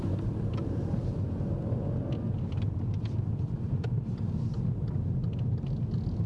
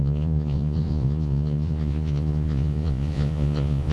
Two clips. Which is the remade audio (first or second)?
second